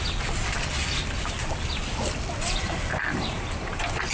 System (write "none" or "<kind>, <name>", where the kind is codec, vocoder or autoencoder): vocoder, BigVGAN v2